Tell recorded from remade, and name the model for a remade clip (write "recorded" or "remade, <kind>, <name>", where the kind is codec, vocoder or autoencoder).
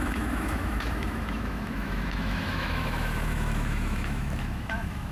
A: remade, autoencoder, DAC-VAE